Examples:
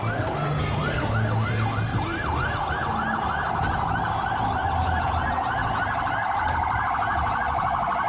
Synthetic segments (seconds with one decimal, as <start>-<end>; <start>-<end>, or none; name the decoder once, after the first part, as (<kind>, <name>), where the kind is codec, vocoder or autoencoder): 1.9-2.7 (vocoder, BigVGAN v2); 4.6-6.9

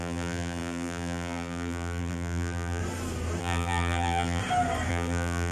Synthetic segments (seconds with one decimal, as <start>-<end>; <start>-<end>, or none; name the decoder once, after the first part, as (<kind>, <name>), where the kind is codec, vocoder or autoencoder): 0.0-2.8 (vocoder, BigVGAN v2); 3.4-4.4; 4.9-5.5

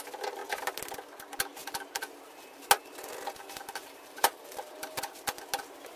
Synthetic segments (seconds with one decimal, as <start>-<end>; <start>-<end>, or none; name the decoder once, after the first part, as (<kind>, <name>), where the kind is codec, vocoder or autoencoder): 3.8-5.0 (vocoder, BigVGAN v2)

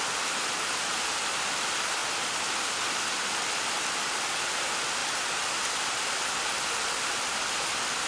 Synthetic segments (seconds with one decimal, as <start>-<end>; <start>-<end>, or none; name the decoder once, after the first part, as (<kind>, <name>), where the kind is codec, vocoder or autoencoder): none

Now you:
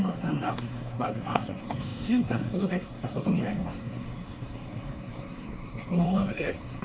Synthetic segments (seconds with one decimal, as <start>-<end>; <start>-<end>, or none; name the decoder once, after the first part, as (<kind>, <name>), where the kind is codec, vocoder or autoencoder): 0.0-6.8 (codec, SNAC)

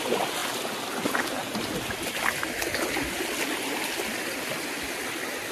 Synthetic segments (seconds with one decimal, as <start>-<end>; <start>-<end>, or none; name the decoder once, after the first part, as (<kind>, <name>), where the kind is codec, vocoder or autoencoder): none

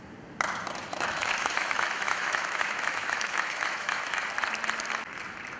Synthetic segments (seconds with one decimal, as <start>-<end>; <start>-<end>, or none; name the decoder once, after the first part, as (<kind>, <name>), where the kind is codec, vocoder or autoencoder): 0.9-4.3 (autoencoder, DAC-VAE)

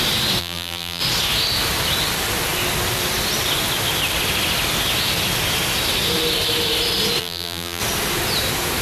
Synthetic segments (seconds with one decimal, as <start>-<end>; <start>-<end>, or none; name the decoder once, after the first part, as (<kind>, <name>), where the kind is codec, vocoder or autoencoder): 0.4-1.0 (vocoder, BigVGAN v2); 7.2-7.8